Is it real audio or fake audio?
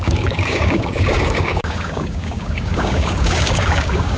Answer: fake